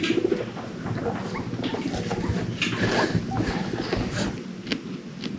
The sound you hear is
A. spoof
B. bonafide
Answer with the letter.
B